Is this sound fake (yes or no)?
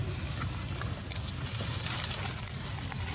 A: no